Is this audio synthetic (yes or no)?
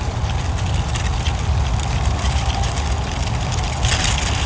no